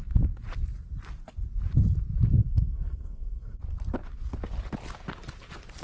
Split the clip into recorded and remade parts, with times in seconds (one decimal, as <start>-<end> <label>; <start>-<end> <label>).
0.0-2.4 recorded; 2.4-3.6 remade; 3.6-5.8 recorded